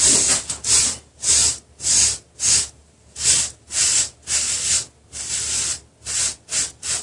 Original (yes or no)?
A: yes